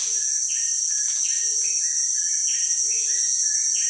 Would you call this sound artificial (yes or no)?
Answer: no